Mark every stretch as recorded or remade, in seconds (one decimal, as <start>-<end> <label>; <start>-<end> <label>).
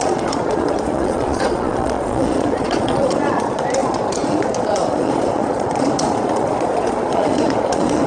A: 0.0-8.1 remade